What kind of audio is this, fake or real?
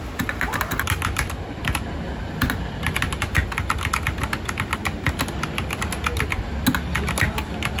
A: real